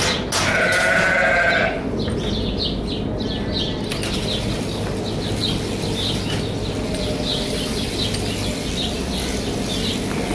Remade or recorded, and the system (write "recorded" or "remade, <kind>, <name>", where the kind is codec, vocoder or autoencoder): recorded